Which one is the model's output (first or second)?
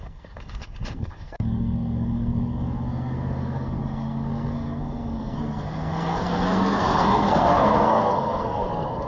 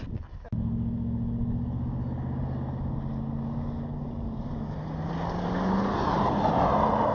first